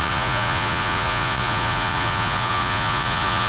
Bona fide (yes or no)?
no